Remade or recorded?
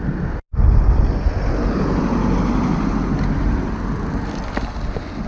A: recorded